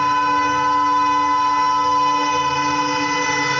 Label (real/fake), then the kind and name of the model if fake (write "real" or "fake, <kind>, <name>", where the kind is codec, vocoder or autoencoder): real